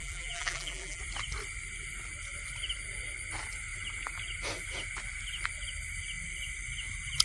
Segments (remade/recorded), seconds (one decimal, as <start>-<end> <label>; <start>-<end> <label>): 0.0-1.0 remade; 1.0-7.2 recorded